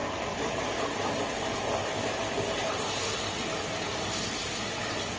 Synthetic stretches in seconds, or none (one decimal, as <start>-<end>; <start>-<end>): 0.0-0.7; 1.8-3.4